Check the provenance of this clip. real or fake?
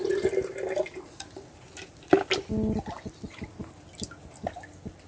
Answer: real